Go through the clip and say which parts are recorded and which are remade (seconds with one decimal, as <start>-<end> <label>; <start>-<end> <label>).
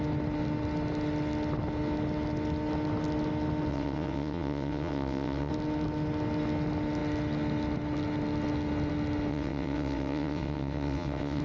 0.0-3.7 recorded; 3.7-5.5 remade; 5.5-9.3 recorded; 9.3-11.4 remade